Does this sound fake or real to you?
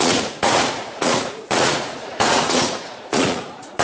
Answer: fake